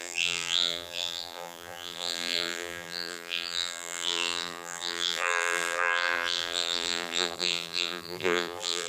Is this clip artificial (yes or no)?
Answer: yes